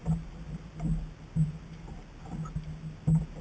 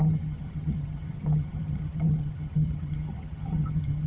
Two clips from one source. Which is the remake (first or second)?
second